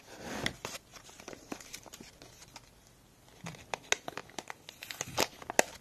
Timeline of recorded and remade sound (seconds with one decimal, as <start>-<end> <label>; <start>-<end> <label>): 0.0-0.9 recorded; 0.9-2.1 remade; 2.1-5.8 recorded